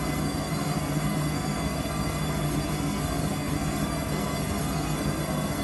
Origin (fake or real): fake